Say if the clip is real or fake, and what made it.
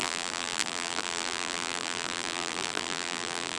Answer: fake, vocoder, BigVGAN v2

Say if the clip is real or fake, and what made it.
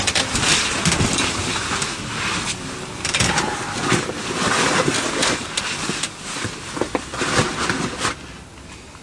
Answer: real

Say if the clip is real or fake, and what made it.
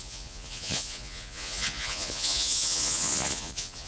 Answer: fake, vocoder, Vocos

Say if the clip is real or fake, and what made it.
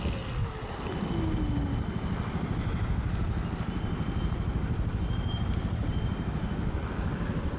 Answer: real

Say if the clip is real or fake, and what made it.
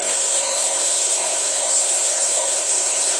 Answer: fake, codec, SNAC